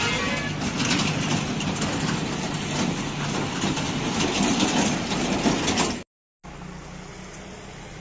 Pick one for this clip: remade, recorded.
recorded